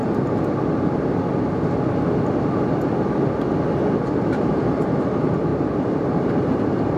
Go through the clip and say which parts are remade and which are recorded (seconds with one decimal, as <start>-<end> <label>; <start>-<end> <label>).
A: 0.0-5.5 recorded; 5.5-7.0 remade